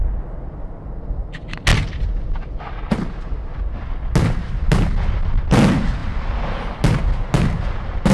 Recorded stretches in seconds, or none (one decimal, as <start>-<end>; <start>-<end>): 0.0-8.1